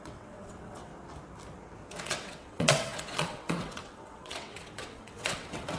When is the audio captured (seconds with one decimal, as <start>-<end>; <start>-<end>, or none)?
0.9-2.0